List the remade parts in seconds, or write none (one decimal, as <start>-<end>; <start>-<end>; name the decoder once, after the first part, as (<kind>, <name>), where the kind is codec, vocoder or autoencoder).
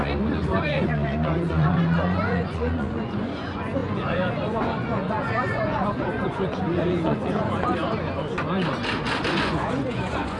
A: 0.0-7.7 (vocoder, Vocos); 9.3-10.4